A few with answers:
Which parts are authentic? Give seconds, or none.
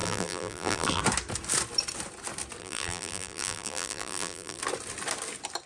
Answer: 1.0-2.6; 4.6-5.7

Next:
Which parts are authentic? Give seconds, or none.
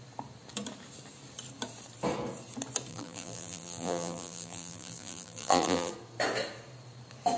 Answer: 0.0-2.9; 5.9-7.4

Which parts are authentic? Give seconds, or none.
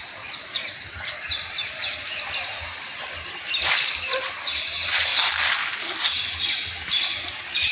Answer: 0.0-7.7